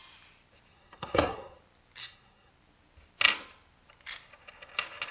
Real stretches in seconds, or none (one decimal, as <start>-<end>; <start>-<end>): 0.0-0.7; 1.6-2.0; 2.5-5.1